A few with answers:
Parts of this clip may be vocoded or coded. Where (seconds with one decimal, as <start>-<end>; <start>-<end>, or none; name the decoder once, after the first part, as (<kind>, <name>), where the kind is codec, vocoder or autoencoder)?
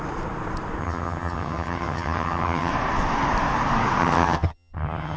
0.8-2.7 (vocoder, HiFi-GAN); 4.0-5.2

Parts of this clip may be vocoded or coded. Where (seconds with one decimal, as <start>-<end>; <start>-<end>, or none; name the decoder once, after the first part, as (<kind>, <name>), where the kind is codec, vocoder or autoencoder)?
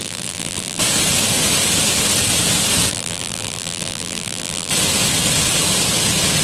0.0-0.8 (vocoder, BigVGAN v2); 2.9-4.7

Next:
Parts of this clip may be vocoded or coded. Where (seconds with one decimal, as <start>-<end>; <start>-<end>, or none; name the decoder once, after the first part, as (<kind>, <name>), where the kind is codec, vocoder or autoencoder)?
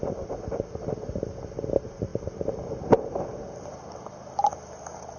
none